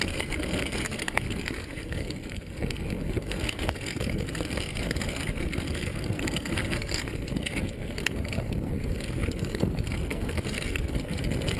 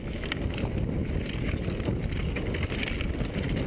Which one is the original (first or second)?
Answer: second